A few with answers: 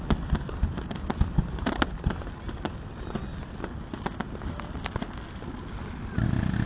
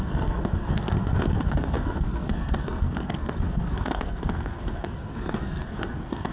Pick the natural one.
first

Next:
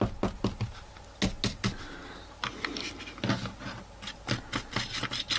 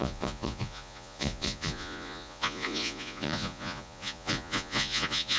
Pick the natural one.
first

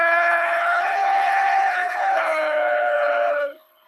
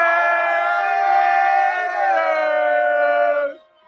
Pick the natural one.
second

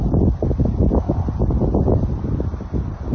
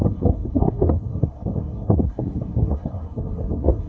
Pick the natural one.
first